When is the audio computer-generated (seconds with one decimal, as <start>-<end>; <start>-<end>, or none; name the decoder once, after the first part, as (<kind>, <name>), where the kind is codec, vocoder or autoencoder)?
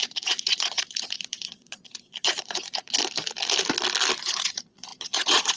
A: 0.0-3.0 (vocoder, Vocos); 4.2-5.6